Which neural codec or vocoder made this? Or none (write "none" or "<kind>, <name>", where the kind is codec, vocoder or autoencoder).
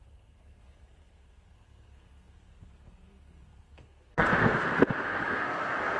codec, SNAC